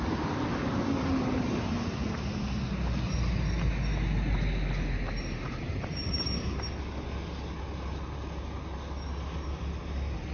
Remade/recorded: recorded